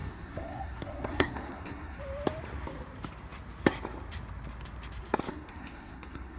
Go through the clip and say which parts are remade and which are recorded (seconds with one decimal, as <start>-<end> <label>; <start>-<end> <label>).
0.0-2.0 remade; 2.0-5.3 recorded; 5.3-6.4 remade